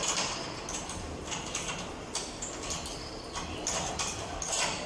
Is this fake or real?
real